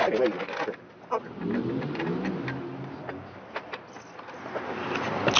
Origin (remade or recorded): recorded